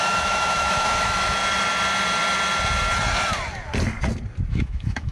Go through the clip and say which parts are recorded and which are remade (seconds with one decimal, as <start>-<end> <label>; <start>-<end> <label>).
0.0-1.4 remade; 1.4-4.5 recorded; 4.5-5.1 remade